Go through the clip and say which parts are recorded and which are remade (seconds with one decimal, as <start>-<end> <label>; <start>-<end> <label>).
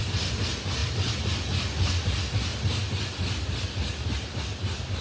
0.0-5.0 recorded